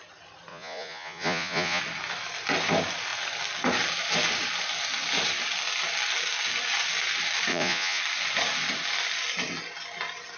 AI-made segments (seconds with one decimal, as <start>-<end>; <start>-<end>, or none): 0.5-1.8; 7.5-8.0